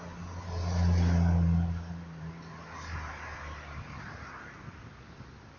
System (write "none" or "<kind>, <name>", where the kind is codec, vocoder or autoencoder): none